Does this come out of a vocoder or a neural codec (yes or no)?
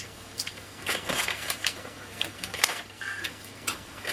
yes